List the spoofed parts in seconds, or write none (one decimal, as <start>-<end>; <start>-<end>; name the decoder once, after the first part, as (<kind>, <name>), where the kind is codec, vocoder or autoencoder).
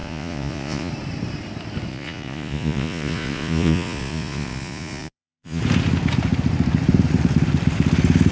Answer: 0.0-0.9 (vocoder, Vocos); 1.9-5.6